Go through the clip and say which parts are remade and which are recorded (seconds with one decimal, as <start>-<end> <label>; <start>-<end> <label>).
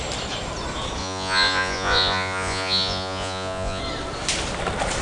0.0-1.0 recorded; 1.0-3.8 remade; 3.8-5.0 recorded